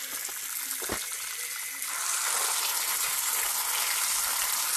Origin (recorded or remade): recorded